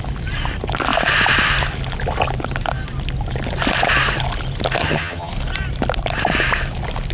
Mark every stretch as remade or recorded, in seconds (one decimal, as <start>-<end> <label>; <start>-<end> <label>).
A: 0.0-4.8 recorded; 4.8-5.3 remade; 5.3-7.1 recorded